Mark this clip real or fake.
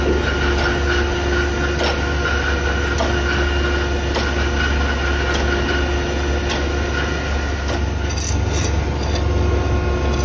real